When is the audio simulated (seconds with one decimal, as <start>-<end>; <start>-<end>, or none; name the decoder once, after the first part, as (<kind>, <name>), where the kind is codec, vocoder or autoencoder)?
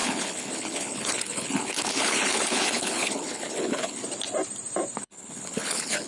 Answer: 0.0-4.0 (codec, HILCodec); 5.0-6.1